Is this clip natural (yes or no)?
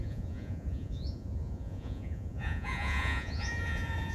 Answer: no